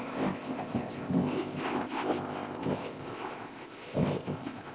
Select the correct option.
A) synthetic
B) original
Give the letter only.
A